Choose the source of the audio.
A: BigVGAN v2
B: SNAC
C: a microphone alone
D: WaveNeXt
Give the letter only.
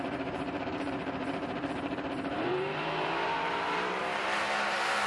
A